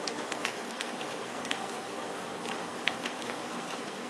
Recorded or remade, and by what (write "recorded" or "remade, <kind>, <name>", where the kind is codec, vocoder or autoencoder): remade, codec, SNAC